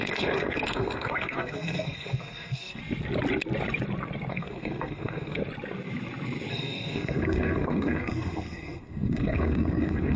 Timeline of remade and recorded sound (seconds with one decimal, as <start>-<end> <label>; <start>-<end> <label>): 0.0-2.8 remade; 2.8-4.3 recorded; 4.3-5.4 remade; 5.4-6.5 recorded; 6.5-10.2 remade